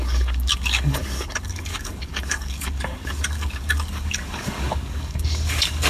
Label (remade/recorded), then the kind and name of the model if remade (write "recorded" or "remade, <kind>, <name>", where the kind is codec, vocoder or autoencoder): remade, codec, DAC